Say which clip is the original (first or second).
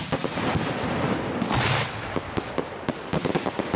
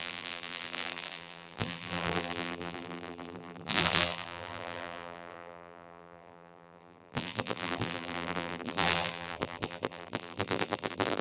first